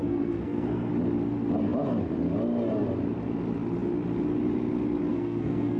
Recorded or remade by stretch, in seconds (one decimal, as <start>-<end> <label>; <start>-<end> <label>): 0.0-0.9 remade; 0.9-5.1 recorded; 5.1-5.8 remade